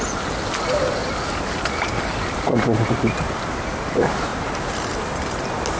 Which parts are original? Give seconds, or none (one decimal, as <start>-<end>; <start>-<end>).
0.0-5.8